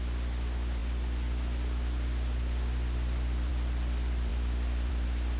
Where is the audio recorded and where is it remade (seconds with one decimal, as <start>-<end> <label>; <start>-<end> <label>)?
0.0-5.4 recorded